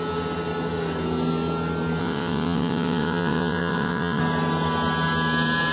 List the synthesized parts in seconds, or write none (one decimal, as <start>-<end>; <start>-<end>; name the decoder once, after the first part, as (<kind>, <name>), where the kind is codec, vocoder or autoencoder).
2.0-4.2 (vocoder, WaveNeXt)